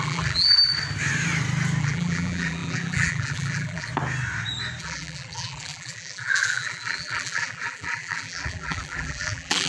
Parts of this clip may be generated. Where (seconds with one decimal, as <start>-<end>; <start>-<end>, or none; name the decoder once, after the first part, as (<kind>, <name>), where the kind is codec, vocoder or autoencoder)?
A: 0.0-0.7 (vocoder, BigVGAN v2); 1.8-3.9; 4.8-9.7